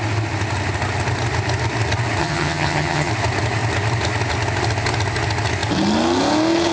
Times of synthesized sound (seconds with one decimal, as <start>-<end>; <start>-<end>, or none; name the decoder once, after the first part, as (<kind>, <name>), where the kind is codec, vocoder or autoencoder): 2.2-3.1 (vocoder, HiFi-GAN)

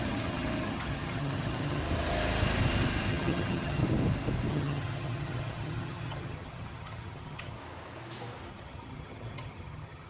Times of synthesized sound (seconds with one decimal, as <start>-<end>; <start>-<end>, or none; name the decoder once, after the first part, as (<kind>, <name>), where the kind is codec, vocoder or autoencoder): 0.0-1.8 (vocoder, HiFi-GAN); 3.1-3.8; 4.5-7.6; 8.5-10.1

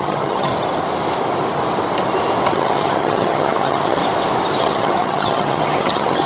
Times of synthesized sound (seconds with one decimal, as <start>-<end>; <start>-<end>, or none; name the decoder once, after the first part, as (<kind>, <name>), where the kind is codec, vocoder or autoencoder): 0.0-0.5 (vocoder, HiFi-GAN); 2.5-4.0; 4.6-6.3